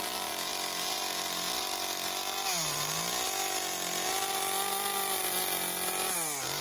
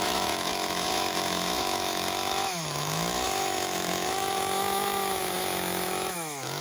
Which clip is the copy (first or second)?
second